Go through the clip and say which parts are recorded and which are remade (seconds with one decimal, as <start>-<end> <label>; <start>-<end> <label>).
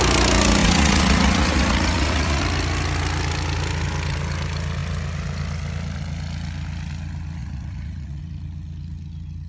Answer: 0.0-0.6 recorded; 0.6-2.4 remade; 2.4-7.4 recorded; 7.4-8.2 remade; 8.2-9.5 recorded